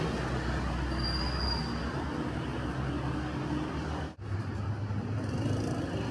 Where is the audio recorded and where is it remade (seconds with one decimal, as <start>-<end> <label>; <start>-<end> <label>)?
0.0-6.1 recorded